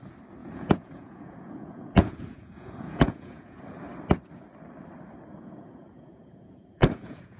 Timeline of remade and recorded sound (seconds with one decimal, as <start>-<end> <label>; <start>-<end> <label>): 0.0-0.4 recorded; 0.4-3.6 remade; 3.6-5.3 recorded; 5.3-7.4 remade